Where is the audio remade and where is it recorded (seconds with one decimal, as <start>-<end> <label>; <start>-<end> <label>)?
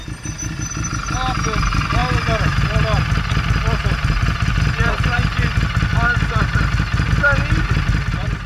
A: 0.0-0.9 remade; 0.9-8.5 recorded